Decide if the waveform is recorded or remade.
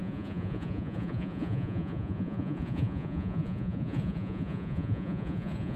remade